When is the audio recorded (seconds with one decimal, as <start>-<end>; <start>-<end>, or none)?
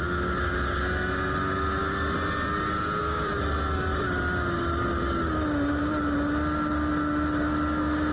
0.0-8.1